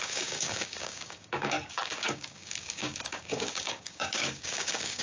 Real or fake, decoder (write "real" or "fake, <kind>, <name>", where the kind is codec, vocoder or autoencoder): fake, codec, DAC